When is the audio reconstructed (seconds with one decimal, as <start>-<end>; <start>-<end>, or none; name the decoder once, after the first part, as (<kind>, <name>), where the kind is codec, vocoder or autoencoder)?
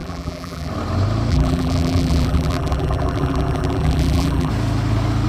0.0-0.7 (vocoder, BigVGAN v2); 1.3-4.5